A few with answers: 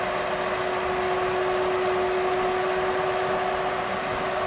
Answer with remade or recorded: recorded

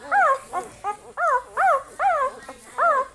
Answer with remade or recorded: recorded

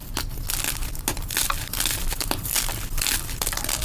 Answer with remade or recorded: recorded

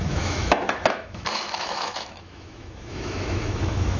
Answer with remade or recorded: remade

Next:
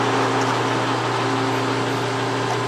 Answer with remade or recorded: recorded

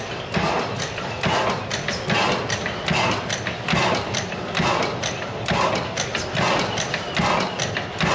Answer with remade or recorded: recorded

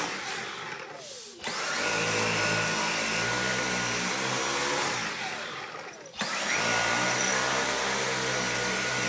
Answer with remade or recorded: recorded